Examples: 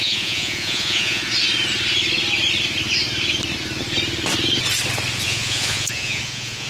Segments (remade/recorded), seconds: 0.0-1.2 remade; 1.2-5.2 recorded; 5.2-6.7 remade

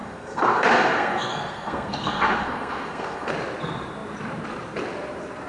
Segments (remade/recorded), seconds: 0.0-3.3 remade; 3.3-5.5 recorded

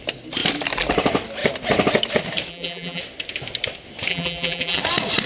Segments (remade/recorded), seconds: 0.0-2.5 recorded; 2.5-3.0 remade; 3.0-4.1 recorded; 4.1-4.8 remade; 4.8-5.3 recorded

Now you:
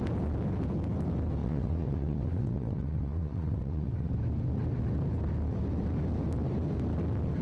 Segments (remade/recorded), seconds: 0.0-1.4 recorded; 1.4-4.1 remade; 4.1-7.4 recorded

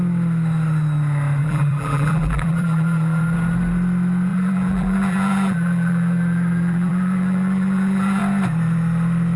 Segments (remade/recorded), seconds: 0.0-1.4 recorded; 1.4-3.2 remade; 3.2-4.3 recorded; 4.3-8.2 remade; 8.2-9.4 recorded

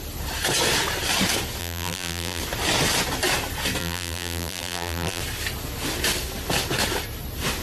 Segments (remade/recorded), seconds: 0.0-1.6 recorded; 1.6-2.4 remade; 2.4-3.8 recorded; 3.8-5.2 remade; 5.2-7.6 recorded

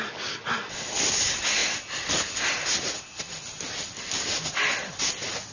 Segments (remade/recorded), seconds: 0.0-5.5 recorded